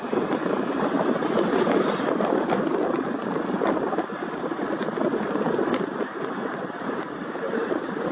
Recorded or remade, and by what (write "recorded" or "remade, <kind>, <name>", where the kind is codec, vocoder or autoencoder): recorded